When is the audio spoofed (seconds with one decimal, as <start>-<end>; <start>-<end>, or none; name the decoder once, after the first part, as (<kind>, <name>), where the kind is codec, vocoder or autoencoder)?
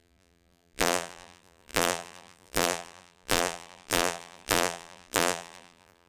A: 0.0-6.1 (vocoder, BigVGAN v2)